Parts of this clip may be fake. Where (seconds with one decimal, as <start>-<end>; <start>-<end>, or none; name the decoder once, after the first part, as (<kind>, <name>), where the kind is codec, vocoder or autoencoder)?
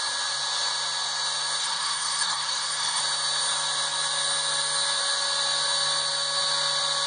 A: 1.6-3.0 (codec, SNAC)